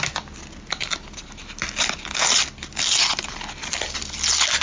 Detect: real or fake real